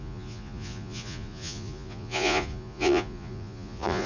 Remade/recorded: remade